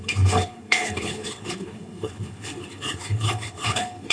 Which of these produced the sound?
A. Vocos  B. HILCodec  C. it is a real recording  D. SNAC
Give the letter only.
B